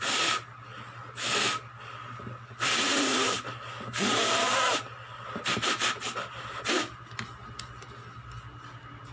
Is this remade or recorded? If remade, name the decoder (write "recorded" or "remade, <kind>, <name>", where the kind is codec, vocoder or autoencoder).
remade, vocoder, BigVGAN v2